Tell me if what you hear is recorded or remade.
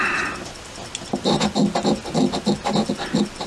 recorded